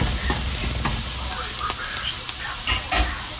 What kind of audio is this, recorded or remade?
recorded